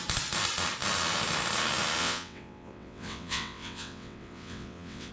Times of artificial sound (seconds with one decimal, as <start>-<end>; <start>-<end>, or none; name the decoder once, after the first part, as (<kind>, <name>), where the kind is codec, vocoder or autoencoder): 2.0-5.1 (vocoder, WaveNeXt)